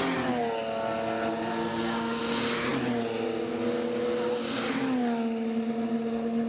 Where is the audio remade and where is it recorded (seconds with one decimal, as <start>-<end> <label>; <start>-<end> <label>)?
0.0-1.7 recorded; 1.7-2.2 remade; 2.2-6.5 recorded